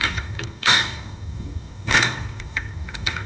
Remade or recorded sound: remade